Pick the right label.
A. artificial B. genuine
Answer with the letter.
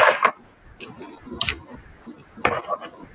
B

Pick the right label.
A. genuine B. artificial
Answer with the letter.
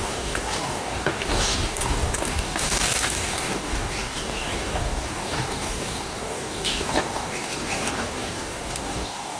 B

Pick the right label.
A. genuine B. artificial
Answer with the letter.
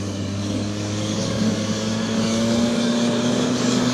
B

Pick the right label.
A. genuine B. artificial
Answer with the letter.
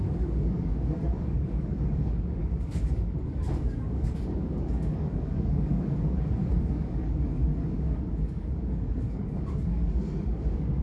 B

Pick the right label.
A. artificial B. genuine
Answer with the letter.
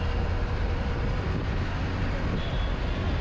B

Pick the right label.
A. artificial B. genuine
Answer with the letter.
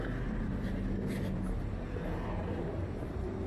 B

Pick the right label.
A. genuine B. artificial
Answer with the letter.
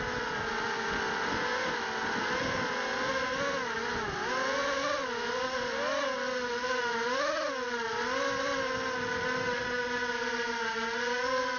A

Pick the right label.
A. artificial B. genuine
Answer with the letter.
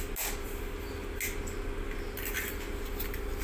B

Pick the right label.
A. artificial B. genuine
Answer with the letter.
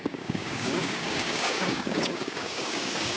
A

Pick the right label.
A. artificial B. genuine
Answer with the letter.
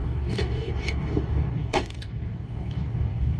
A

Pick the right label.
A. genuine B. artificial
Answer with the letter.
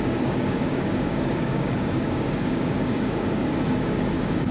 B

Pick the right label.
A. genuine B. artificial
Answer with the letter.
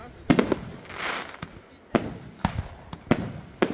A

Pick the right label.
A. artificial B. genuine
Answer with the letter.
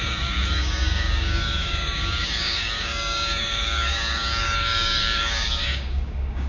A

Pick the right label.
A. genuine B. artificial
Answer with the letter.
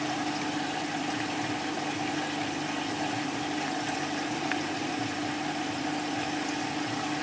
A